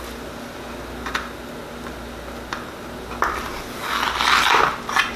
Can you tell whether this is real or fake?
real